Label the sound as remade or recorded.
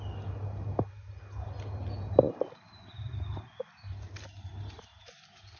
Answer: recorded